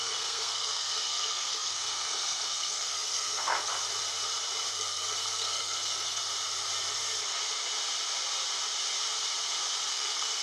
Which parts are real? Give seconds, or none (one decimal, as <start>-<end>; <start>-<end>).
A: 3.7-4.7; 6.2-9.9